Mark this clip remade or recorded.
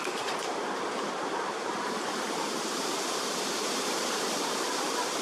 remade